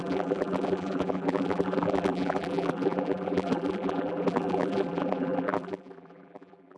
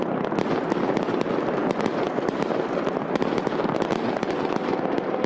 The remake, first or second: first